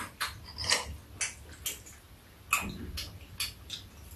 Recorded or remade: recorded